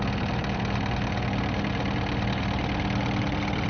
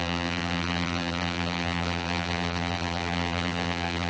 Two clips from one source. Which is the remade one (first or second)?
second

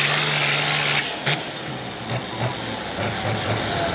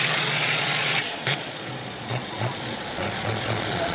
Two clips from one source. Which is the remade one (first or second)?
second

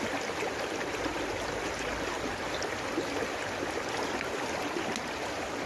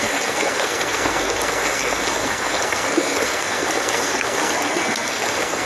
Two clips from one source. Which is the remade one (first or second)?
second